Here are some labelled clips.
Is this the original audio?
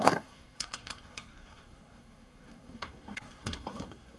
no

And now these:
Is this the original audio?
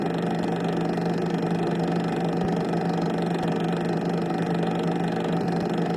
yes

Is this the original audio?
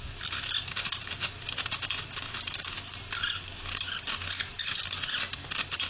yes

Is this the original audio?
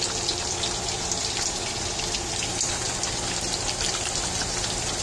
no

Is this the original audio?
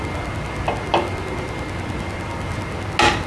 yes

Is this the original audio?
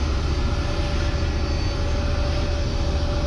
yes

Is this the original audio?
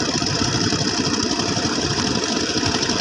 no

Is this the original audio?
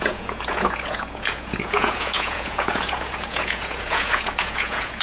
no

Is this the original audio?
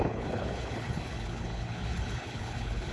no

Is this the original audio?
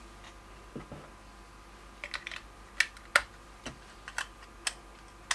yes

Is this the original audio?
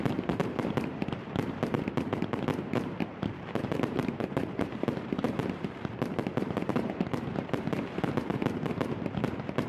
no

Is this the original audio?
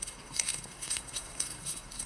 no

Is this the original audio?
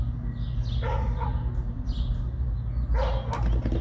yes